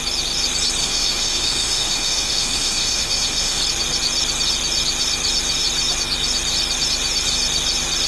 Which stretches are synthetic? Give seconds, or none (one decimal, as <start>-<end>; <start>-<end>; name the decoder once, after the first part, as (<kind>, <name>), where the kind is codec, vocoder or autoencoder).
0.8-3.6 (autoencoder, DAC-VAE)